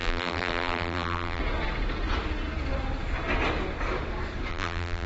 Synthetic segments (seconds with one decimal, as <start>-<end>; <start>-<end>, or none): 0.0-1.4; 4.5-5.1